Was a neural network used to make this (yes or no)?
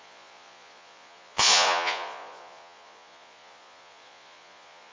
yes